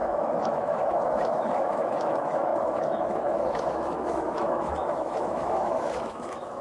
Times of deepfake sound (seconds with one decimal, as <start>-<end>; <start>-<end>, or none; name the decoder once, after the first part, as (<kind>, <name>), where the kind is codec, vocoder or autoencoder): 0.0-6.6 (autoencoder, DAC-VAE)